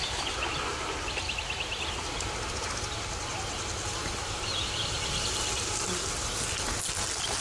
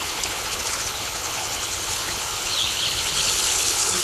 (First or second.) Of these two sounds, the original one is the first